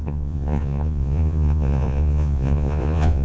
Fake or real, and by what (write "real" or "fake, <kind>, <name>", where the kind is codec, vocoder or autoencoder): fake, vocoder, Vocos